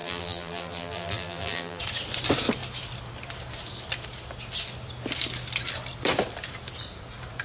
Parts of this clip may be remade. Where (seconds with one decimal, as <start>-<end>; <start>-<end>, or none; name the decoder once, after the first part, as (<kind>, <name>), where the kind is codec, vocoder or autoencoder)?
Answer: 0.0-1.8 (vocoder, BigVGAN v2)